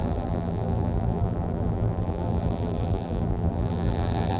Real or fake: fake